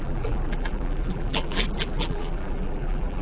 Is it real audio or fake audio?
fake